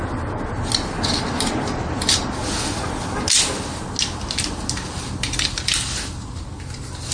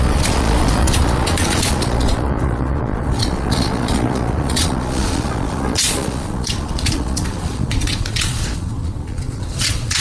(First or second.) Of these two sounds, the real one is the first